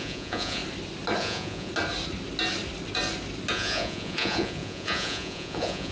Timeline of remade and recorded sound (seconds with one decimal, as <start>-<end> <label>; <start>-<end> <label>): 0.0-0.6 remade; 0.6-1.2 recorded; 1.2-1.7 remade; 1.7-3.5 recorded; 3.5-5.9 remade